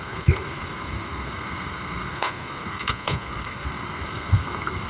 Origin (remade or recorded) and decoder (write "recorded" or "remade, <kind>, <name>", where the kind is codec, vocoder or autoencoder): remade, codec, SNAC